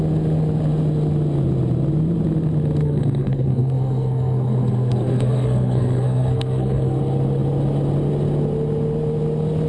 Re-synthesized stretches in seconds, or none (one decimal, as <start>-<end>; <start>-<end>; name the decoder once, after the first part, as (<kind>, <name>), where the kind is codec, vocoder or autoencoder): 2.8-7.0 (codec, SNAC)